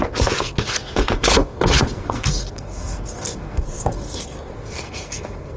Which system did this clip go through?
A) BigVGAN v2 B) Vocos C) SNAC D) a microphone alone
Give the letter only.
C